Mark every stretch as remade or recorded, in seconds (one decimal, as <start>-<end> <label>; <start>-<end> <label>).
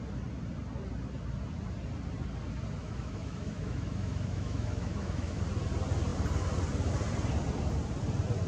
0.0-2.8 recorded; 2.8-5.4 remade; 5.4-8.5 recorded